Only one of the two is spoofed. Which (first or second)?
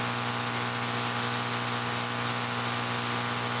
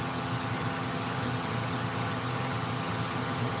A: second